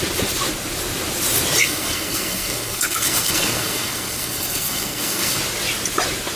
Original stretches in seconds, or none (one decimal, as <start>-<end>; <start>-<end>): 0.0-1.6; 5.4-6.4